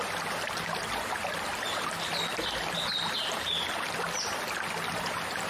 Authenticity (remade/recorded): recorded